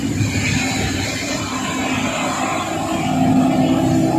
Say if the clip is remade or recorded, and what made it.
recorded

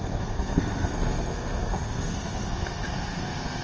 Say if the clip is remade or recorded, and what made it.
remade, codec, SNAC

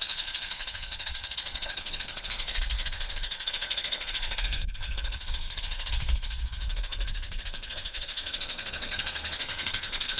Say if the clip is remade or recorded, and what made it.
remade, codec, SNAC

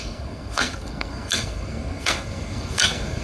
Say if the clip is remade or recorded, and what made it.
remade, codec, SNAC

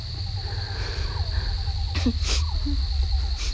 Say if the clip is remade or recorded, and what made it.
recorded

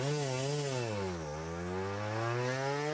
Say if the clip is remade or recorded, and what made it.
recorded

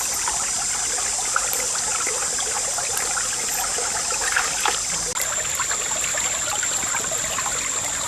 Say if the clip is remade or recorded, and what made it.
recorded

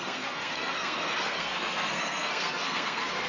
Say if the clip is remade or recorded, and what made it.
remade, codec, SNAC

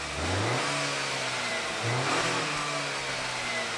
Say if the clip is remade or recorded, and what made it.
recorded